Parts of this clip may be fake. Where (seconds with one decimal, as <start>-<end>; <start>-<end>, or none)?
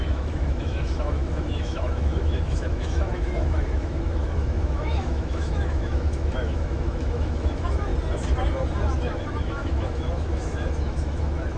0.0-7.9; 9.0-11.6